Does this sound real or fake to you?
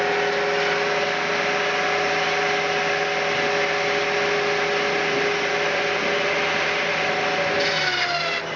real